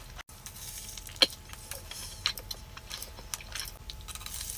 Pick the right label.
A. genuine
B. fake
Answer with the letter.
A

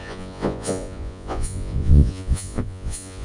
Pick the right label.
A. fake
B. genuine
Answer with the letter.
A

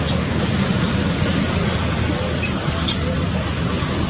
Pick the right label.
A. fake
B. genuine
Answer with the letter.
B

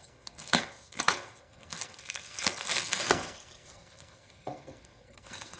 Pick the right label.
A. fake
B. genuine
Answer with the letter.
A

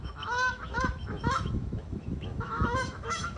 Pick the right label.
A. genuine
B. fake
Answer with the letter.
B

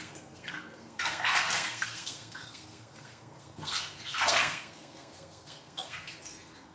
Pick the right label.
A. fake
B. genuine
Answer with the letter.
A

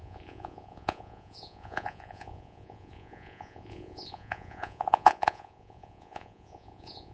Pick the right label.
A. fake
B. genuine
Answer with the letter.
A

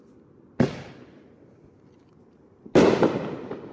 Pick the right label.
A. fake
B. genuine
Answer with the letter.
B